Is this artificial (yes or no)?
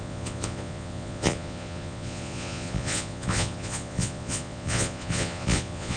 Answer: yes